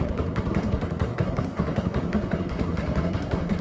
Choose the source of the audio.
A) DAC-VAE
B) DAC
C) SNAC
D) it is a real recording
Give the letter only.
C